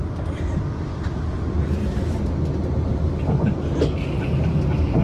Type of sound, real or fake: real